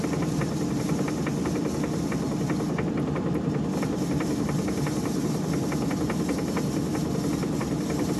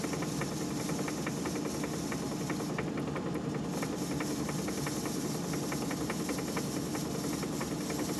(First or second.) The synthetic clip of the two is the first